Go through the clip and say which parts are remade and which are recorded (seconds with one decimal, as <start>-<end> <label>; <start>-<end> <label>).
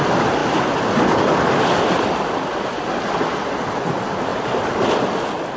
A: 0.0-5.6 recorded